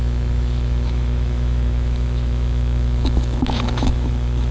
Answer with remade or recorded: remade